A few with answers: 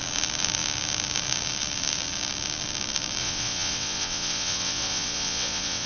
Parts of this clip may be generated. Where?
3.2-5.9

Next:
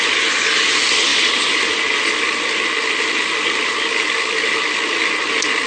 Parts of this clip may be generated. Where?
none